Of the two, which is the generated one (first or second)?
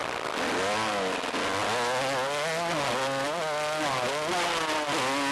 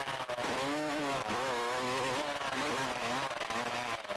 second